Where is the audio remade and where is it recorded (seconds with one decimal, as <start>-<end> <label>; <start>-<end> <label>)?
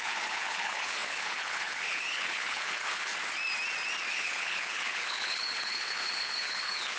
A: 0.0-3.1 remade; 3.1-4.1 recorded; 4.1-7.0 remade